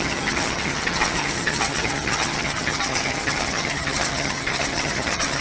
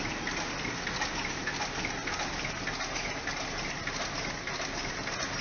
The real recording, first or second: second